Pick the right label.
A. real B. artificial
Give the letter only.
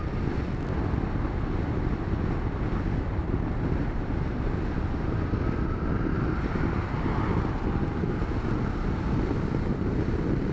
A